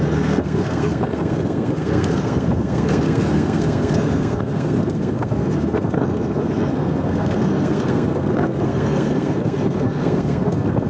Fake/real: fake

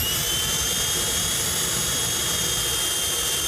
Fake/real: real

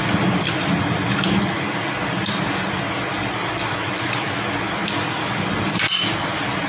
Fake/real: real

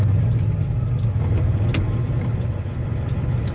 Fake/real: real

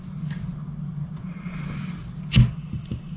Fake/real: real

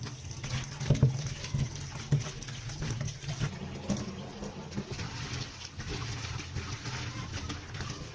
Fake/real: real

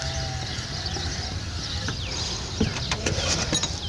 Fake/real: real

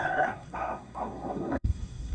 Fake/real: fake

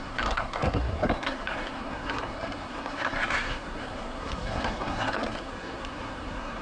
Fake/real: fake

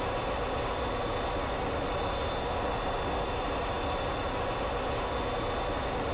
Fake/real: real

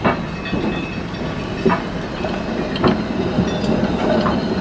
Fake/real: real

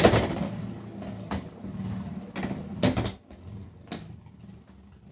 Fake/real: real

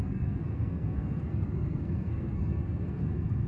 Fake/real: fake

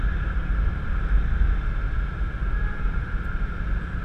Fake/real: real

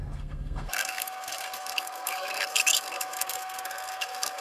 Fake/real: fake